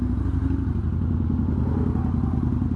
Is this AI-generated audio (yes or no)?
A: no